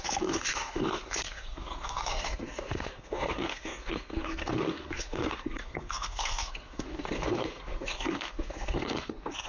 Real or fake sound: fake